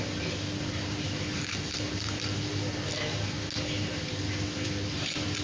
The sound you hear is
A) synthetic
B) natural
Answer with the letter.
B